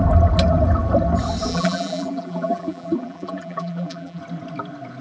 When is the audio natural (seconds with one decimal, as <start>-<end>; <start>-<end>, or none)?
0.0-1.5; 4.2-5.0